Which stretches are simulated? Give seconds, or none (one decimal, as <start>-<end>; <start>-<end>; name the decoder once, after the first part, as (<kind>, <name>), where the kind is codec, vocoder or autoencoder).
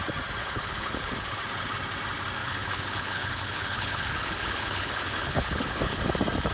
0.4-1.4 (codec, HILCodec); 2.4-6.0